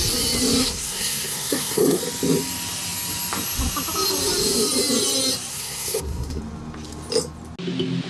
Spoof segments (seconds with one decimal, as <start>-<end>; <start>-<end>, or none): 0.6-2.0; 5.5-6.4